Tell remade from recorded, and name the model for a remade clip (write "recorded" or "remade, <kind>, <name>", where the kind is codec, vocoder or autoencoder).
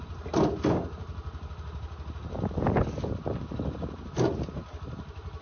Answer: recorded